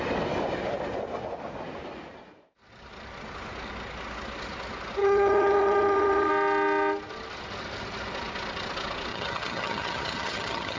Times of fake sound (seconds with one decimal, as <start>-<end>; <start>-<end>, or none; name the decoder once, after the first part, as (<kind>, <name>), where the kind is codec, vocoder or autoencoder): 5.0-6.3 (vocoder, HiFi-GAN); 9.1-10.8

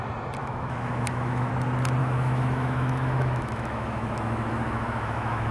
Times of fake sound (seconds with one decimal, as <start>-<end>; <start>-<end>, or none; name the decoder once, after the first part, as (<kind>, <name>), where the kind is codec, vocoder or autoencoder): 0.4-1.5 (autoencoder, DAC-VAE); 2.0-5.5